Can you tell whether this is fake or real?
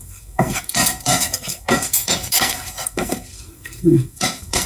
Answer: fake